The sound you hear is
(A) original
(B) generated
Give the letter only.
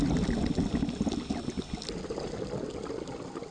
A